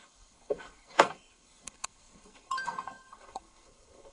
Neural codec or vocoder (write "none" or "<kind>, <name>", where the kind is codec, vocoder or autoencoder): codec, SNAC